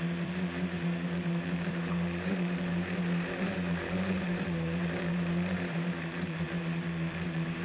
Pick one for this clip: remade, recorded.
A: remade